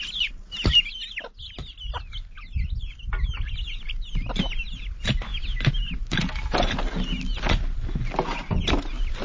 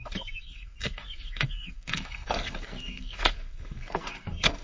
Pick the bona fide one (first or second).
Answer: first